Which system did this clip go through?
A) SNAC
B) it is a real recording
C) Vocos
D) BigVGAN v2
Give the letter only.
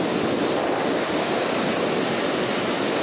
B